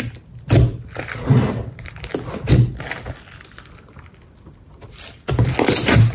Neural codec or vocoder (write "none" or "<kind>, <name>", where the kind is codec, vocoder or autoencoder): none